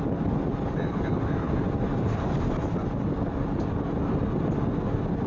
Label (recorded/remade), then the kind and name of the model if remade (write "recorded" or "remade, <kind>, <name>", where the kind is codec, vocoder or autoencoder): recorded